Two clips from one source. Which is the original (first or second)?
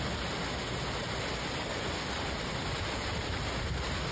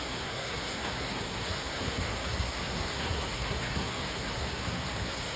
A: first